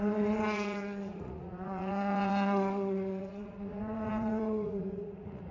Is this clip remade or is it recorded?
remade